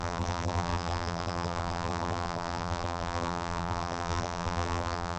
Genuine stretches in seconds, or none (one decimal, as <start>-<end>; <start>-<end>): none